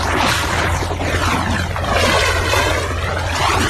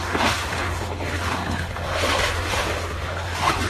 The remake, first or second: second